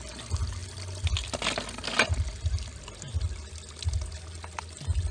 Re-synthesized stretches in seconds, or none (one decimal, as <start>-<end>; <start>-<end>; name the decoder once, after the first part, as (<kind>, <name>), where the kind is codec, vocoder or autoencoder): none